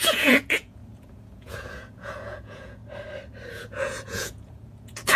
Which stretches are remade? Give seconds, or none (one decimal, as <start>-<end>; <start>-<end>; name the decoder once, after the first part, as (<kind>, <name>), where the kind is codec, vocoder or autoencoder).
0.0-2.8 (vocoder, Vocos); 3.5-5.2